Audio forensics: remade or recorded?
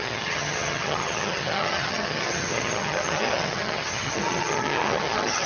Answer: remade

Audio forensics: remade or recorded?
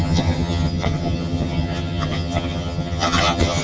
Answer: remade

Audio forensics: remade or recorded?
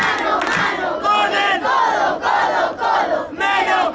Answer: recorded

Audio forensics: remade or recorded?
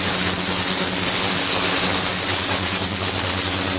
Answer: recorded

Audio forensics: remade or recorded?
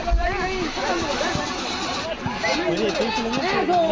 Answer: recorded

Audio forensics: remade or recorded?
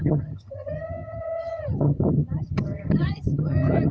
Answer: remade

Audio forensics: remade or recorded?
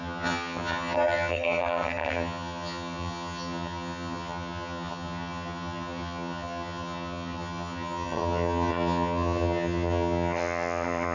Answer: remade